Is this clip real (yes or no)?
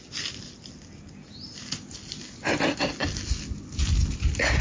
yes